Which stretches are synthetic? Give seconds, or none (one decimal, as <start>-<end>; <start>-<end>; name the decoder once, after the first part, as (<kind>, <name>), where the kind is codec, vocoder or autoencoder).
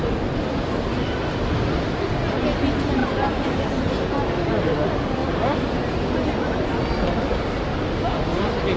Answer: none